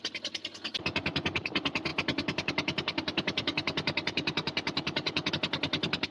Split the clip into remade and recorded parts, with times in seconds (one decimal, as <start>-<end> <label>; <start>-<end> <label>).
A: 0.0-1.9 recorded; 1.9-5.3 remade; 5.3-6.1 recorded